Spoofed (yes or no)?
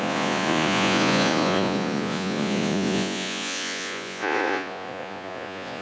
yes